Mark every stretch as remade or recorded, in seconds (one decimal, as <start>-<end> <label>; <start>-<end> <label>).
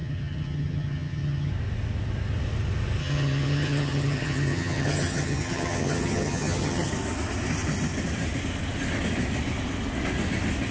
0.0-1.5 remade; 1.5-3.0 recorded; 3.0-6.9 remade; 6.9-10.7 recorded